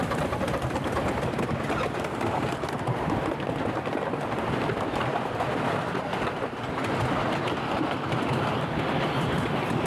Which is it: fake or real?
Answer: real